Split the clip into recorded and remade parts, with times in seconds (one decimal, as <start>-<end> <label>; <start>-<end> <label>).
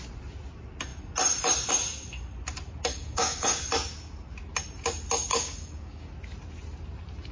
0.0-2.9 recorded; 2.9-3.6 remade; 3.6-5.3 recorded; 5.3-6.1 remade; 6.1-7.3 recorded